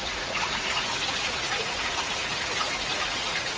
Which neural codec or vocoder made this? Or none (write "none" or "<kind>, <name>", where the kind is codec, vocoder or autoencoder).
vocoder, Vocos